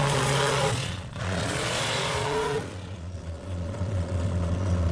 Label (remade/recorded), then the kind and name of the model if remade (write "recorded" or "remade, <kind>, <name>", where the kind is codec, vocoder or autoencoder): remade, vocoder, Vocos